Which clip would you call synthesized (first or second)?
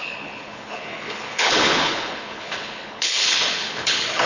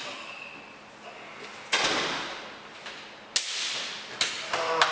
first